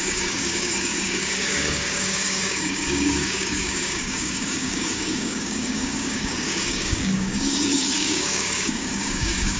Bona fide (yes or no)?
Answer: no